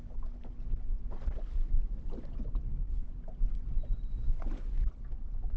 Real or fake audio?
real